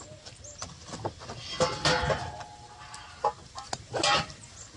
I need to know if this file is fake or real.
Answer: real